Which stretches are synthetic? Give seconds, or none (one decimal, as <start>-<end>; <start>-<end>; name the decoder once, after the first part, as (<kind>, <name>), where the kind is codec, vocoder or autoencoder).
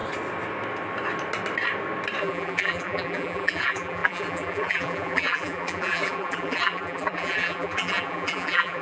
2.2-8.8 (vocoder, BigVGAN v2)